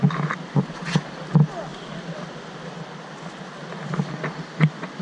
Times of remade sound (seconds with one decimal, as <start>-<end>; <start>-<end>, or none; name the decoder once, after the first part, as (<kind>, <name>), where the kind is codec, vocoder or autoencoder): none